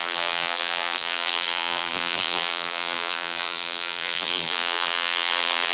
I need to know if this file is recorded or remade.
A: remade